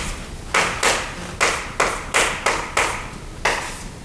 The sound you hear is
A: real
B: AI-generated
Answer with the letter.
A